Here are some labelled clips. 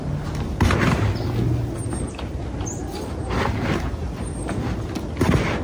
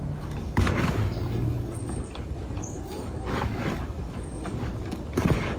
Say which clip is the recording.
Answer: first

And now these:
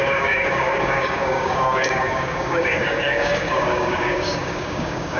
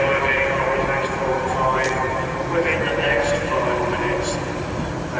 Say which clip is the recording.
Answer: second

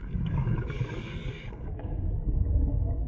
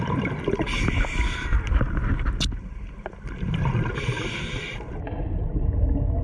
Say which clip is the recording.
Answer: second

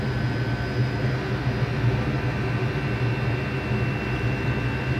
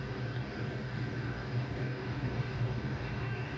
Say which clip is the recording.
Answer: first